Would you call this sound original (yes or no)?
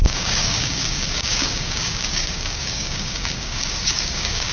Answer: no